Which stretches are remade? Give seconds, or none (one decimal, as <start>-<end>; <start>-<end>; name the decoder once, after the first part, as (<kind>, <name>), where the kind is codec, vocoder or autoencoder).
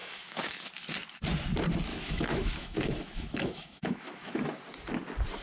0.0-0.7 (autoencoder, DAC-VAE); 1.9-4.6